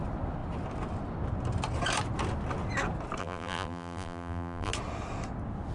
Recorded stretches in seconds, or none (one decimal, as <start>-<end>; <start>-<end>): 0.0-3.2; 4.7-5.7